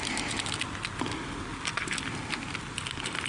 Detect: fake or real real